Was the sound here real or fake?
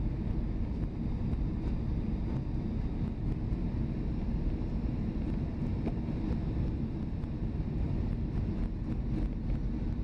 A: real